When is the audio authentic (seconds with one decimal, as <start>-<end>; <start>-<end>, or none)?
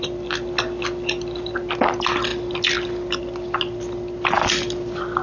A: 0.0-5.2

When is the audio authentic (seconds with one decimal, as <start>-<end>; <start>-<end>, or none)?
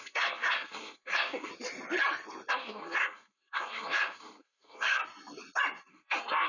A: 1.5-2.5; 5.0-5.9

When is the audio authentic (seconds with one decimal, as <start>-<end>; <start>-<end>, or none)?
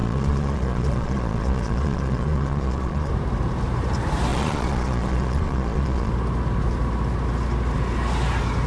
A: 3.1-4.3; 6.1-8.7